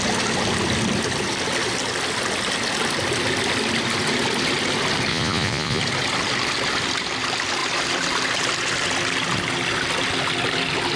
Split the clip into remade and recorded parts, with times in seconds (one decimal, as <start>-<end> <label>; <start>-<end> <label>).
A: 0.0-5.1 recorded; 5.1-5.8 remade; 5.8-11.0 recorded